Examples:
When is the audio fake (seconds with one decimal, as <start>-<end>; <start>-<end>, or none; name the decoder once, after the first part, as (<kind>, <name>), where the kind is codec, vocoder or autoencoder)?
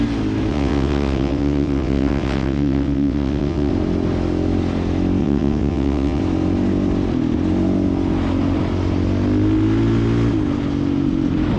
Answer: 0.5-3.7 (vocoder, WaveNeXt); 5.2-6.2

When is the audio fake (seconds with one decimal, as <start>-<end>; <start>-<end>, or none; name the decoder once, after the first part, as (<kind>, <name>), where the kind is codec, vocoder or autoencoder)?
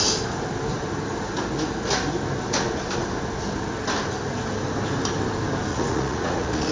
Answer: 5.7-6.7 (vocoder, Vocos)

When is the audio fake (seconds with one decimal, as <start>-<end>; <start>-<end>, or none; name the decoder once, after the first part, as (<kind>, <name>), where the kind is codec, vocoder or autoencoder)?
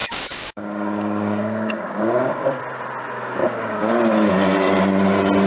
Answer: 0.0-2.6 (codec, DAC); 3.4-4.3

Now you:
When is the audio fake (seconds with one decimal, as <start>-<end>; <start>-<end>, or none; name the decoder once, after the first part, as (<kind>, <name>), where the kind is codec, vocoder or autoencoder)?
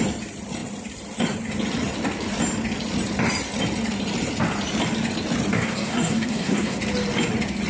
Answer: 5.5-6.8 (codec, SNAC)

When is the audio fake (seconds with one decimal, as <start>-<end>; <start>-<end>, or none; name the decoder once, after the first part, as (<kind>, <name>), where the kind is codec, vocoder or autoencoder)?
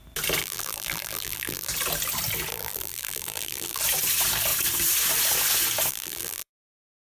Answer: 0.4-1.7 (vocoder, BigVGAN v2); 2.5-3.8; 5.9-6.5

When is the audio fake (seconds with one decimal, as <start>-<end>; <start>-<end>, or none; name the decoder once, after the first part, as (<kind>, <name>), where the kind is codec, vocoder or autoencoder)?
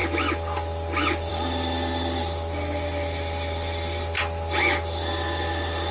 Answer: none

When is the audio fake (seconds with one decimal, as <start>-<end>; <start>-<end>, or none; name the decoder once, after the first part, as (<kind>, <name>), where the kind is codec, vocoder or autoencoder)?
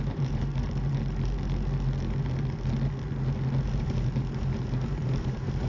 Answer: 0.0-0.5 (vocoder, BigVGAN v2); 3.6-5.7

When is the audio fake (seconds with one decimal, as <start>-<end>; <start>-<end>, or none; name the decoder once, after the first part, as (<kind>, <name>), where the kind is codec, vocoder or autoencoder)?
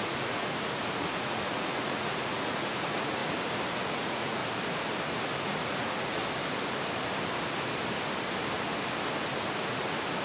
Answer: 0.0-3.2 (vocoder, Vocos); 3.9-4.4; 5.4-6.2; 9.6-10.2